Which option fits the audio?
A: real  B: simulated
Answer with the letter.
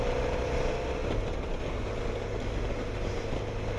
A